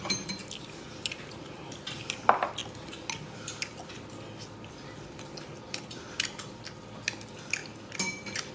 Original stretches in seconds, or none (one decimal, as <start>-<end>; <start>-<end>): 0.0-8.5